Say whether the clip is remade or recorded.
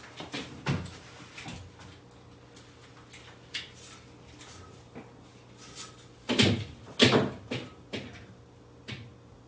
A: recorded